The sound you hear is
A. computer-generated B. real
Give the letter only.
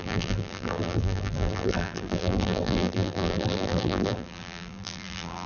A